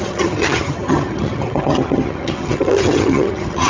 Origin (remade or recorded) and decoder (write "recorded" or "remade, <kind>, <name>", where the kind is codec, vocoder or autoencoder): remade, vocoder, HiFi-GAN